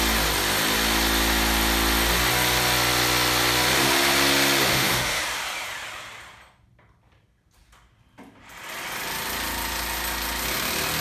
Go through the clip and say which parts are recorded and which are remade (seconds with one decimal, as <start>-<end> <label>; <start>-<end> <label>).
0.0-4.7 recorded; 4.7-5.2 remade; 5.2-11.0 recorded